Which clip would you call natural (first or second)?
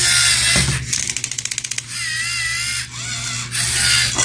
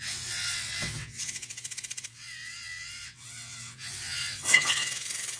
first